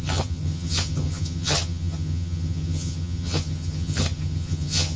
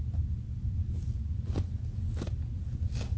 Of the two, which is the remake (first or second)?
first